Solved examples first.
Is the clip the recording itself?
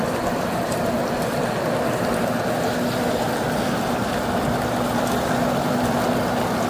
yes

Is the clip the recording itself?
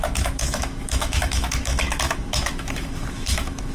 no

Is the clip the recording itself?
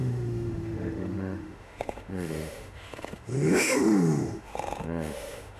no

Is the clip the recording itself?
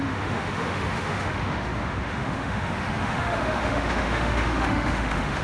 no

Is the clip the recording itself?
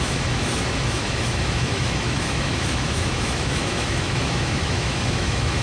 no